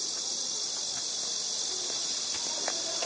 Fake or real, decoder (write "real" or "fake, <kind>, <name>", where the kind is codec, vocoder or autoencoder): real